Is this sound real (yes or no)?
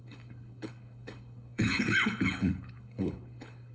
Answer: no